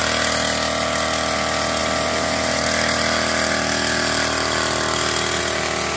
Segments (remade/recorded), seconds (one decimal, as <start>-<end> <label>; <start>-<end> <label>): 0.0-6.0 recorded